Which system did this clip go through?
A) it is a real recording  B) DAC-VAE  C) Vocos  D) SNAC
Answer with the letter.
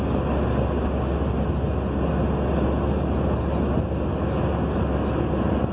A